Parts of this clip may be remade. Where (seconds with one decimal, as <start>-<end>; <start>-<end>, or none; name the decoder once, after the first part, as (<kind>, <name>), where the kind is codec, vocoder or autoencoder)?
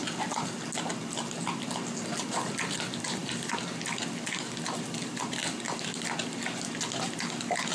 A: none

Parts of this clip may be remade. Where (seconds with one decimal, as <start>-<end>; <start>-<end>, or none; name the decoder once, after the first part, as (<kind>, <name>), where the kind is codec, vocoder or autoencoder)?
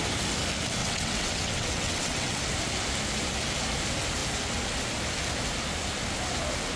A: 0.8-2.4 (vocoder, WaveNeXt)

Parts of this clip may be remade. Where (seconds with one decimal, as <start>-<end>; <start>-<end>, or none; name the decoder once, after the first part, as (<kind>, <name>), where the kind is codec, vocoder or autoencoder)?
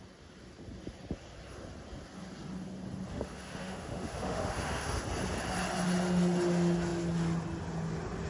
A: 3.1-5.0 (autoencoder, DAC-VAE)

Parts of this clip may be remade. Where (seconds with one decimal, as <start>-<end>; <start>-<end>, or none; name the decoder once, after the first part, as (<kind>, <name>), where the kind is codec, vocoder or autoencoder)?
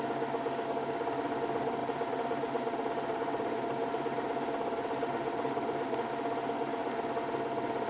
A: 1.8-6.1 (vocoder, BigVGAN v2)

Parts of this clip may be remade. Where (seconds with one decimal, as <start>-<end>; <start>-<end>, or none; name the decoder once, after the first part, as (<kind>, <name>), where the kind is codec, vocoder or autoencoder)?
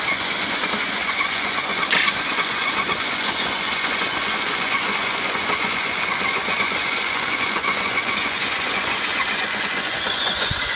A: 0.0-10.8 (vocoder, Vocos)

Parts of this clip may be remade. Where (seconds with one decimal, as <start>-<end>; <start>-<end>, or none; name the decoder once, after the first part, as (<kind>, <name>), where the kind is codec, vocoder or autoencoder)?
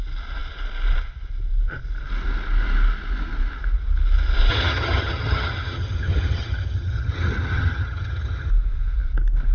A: 4.5-8.5 (vocoder, HiFi-GAN)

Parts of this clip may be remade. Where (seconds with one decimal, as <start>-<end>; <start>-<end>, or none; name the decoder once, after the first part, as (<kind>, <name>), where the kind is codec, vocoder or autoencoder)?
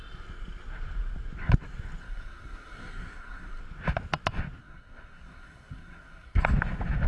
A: 2.0-3.6 (codec, SNAC); 4.6-6.4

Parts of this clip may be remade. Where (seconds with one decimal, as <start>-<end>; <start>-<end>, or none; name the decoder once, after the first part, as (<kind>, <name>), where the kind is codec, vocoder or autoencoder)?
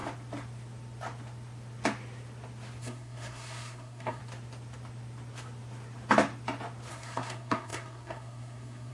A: 2.8-4.2 (codec, SNAC); 6.9-8.9